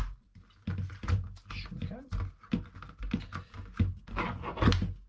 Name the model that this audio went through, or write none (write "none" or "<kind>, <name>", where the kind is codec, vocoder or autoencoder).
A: none